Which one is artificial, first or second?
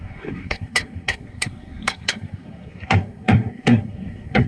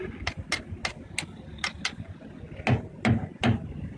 first